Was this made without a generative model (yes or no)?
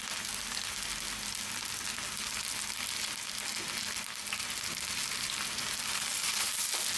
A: yes